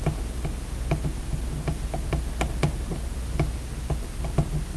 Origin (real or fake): real